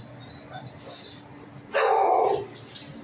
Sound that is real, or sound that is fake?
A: real